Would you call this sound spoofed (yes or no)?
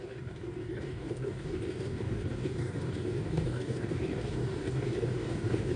yes